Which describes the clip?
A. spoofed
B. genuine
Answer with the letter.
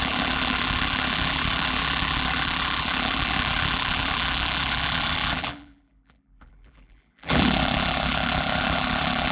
A